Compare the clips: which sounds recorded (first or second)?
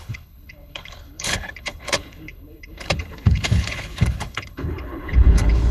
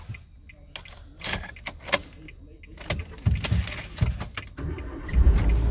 second